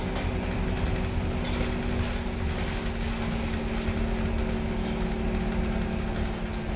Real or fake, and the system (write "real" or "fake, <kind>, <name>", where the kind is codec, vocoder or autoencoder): real